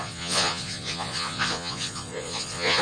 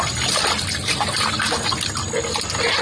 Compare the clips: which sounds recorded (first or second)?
second